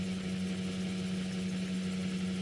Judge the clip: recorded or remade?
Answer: recorded